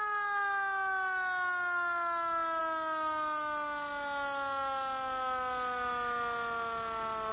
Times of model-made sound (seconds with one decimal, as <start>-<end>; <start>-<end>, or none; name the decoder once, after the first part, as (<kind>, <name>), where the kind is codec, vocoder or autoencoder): none